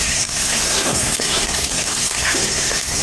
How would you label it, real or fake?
fake